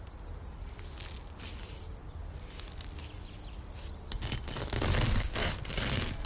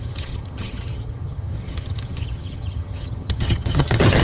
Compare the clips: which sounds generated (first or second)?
second